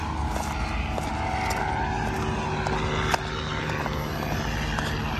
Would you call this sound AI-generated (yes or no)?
no